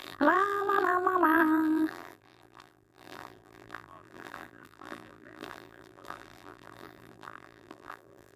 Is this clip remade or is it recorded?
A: remade